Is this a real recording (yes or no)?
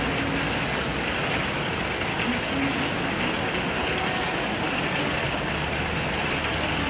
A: yes